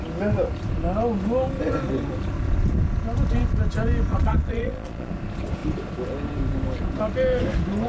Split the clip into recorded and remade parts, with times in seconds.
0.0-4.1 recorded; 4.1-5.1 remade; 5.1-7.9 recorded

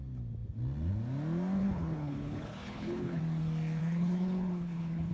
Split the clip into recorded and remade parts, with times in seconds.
0.0-1.6 recorded; 1.6-3.2 remade; 3.2-3.8 recorded; 3.8-5.1 remade